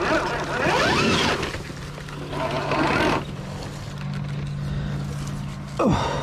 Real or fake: real